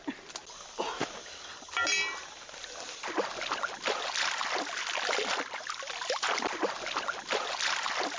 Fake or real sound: real